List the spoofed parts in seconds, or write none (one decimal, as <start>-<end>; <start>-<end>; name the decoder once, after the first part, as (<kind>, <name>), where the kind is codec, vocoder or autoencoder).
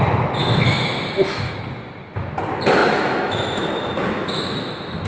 0.4-1.6 (autoencoder, DAC-VAE); 2.8-5.1